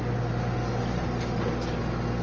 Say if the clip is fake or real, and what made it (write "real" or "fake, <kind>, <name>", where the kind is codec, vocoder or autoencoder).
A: real